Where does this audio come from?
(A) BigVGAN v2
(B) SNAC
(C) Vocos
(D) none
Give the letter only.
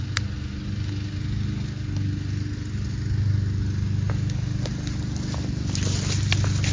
D